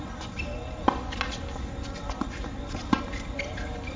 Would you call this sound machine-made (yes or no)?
no